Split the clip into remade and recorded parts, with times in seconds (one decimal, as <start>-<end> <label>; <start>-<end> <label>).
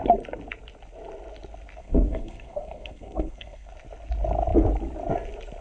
0.0-1.8 recorded; 1.8-3.7 remade; 3.7-5.6 recorded